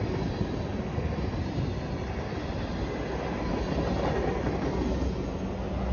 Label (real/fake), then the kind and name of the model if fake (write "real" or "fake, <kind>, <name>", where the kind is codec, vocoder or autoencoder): real